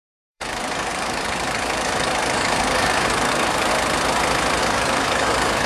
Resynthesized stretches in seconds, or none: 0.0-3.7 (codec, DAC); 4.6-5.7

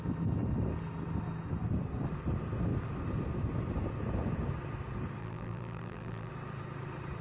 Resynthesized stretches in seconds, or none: 5.2-6.3 (vocoder, BigVGAN v2)

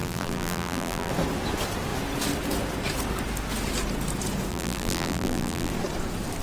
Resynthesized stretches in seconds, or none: 0.0-1.1 (vocoder, BigVGAN v2); 4.5-5.7

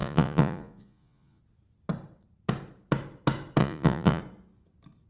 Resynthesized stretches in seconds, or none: 0.0-1.4 (vocoder, Vocos); 3.6-4.2

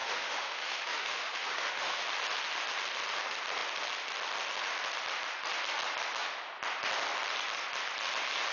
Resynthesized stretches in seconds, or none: 0.0-2.0 (autoencoder, DAC-VAE)